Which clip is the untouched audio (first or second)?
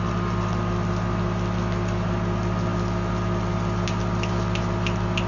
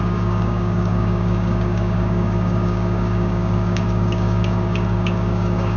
first